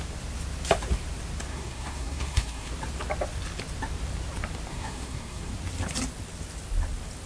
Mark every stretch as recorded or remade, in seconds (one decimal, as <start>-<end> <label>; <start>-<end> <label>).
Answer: 0.0-1.5 recorded; 1.5-2.7 remade; 2.7-4.7 recorded; 4.7-5.5 remade; 5.5-7.3 recorded